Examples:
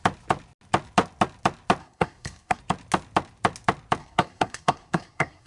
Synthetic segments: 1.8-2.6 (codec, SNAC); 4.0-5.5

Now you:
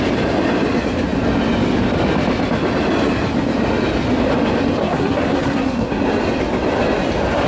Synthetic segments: 4.8-6.0 (codec, SNAC)

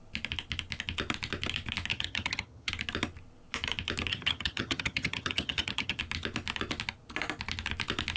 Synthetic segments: 1.9-2.7 (vocoder, HiFi-GAN); 4.1-6.0

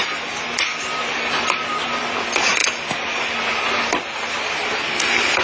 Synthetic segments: none